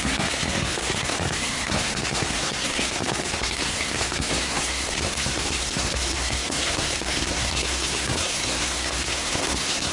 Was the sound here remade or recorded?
remade